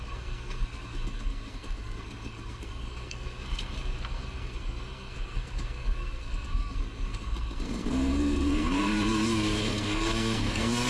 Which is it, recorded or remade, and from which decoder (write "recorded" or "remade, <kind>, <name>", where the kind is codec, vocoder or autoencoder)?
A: remade, codec, SNAC